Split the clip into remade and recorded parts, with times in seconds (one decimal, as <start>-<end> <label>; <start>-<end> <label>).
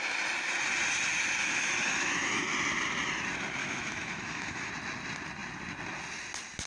0.0-1.4 recorded; 1.4-2.5 remade; 2.5-3.6 recorded; 3.6-4.7 remade; 4.7-6.7 recorded